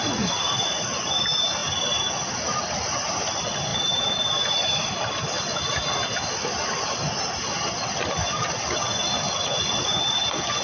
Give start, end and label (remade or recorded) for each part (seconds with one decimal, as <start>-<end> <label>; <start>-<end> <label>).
0.0-10.6 recorded